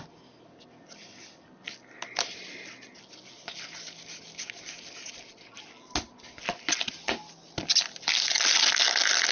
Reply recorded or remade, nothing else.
recorded